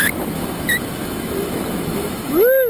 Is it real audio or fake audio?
fake